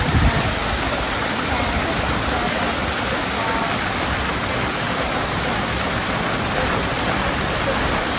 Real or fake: real